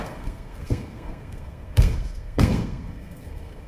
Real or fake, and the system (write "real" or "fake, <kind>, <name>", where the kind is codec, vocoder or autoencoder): fake, codec, SNAC